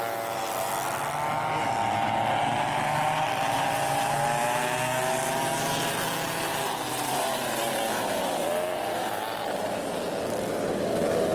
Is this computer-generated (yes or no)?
no